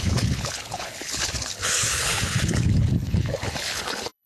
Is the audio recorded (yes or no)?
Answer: no